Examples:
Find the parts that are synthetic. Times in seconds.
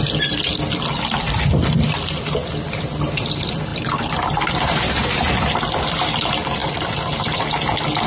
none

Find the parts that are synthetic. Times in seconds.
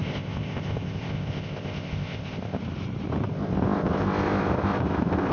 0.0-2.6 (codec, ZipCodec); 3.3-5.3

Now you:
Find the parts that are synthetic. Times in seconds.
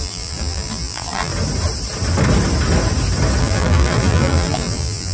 0.0-1.3 (vocoder, BigVGAN v2); 3.4-5.1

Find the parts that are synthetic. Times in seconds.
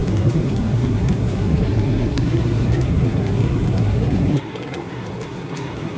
0.0-6.0 (codec, SNAC)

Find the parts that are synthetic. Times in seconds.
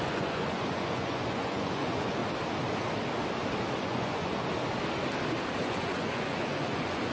0.0-2.2 (vocoder, Vocos); 3.8-4.4; 5.6-7.1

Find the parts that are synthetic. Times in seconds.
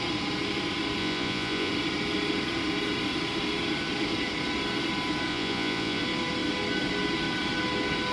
1.0-1.7 (vocoder, Vocos); 5.3-6.0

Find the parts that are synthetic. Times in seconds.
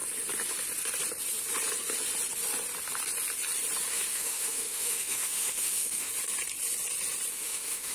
3.9-6.1 (autoencoder, DAC-VAE); 7.3-7.9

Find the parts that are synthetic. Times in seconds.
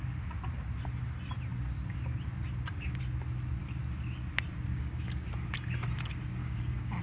4.7-5.3 (codec, DAC); 6.4-7.0